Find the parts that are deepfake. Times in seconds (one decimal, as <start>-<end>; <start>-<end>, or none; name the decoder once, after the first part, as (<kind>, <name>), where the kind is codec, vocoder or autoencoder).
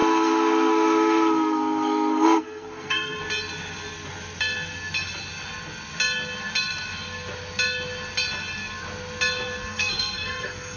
0.0-3.2 (codec, SNAC); 9.7-10.8